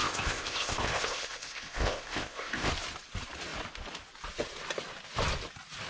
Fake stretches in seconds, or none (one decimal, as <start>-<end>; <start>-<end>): 0.0-2.7